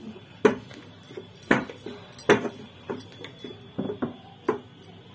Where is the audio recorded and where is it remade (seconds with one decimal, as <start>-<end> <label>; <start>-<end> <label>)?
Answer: 0.0-5.1 recorded